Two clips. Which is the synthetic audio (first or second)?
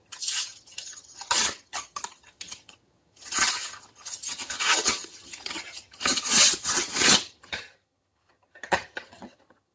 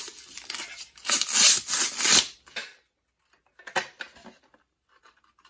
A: first